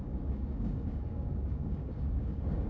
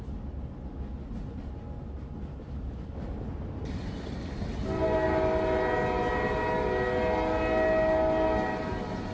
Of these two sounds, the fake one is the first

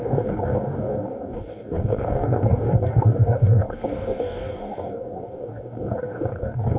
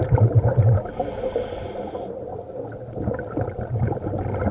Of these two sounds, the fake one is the first